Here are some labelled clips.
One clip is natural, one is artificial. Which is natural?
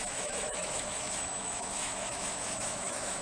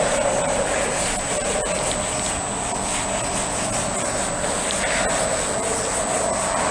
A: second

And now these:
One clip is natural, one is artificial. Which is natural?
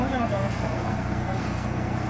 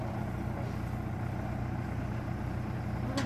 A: second